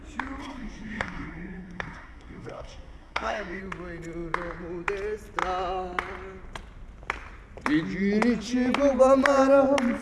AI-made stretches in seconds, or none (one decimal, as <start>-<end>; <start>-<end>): 0.4-3.6